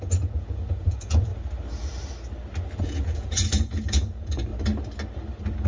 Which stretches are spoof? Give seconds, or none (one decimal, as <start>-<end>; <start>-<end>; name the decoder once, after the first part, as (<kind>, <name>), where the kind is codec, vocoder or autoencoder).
0.0-1.3 (vocoder, Vocos); 2.8-4.5